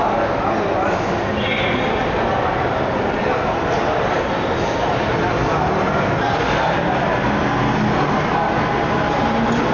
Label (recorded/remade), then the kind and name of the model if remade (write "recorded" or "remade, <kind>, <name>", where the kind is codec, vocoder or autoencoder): recorded